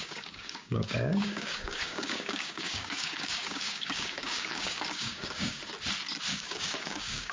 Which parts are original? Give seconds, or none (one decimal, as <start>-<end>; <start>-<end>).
5.6-6.3